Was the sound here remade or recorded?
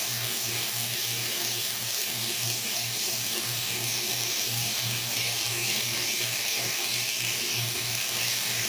remade